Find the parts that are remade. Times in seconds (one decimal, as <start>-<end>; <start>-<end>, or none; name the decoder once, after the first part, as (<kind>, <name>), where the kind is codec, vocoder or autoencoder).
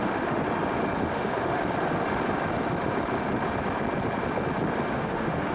0.0-0.4 (autoencoder, DAC-VAE); 1.0-1.6; 4.9-5.5